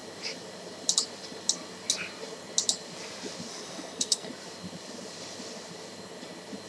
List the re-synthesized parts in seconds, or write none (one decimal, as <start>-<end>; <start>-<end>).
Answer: 3.5-4.3